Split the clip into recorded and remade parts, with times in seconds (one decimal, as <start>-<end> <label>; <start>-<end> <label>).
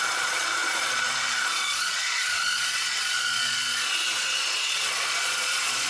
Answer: 0.0-5.9 remade